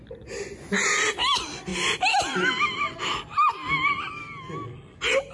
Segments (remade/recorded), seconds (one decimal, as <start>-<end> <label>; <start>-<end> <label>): 0.0-5.3 recorded